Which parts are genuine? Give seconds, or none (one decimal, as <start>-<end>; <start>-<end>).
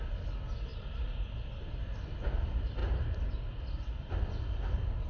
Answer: 0.0-5.1